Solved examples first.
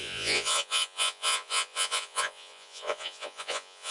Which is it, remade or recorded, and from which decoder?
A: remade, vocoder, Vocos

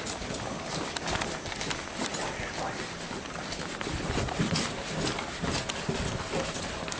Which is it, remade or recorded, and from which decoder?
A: recorded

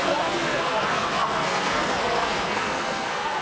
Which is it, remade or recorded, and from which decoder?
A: remade, codec, SNAC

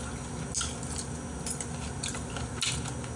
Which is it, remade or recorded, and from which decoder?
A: recorded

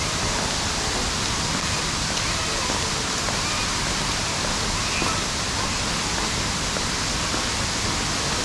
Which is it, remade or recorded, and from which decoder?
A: recorded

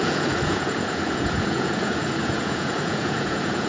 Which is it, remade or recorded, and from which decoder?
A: remade, vocoder, Vocos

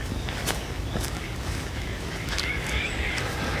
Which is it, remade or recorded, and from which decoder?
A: remade, codec, DAC